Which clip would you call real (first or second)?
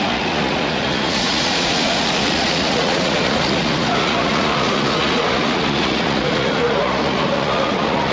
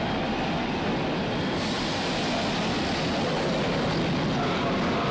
second